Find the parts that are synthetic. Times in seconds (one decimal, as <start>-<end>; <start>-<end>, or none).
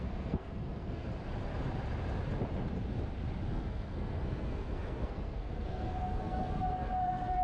0.0-1.1; 3.5-7.4